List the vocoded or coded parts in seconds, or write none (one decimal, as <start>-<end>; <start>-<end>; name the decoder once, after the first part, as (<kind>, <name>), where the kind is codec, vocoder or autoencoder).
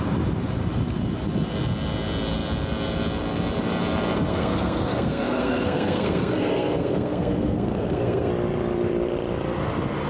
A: 4.3-8.3 (codec, SNAC)